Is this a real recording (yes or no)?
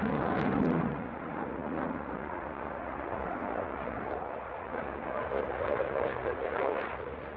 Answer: no